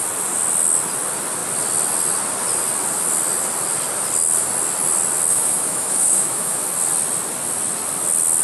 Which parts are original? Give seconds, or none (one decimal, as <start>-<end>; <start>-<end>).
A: 0.0-5.3; 6.6-8.4